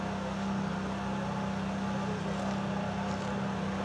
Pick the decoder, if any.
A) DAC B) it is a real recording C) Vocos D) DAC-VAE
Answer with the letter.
B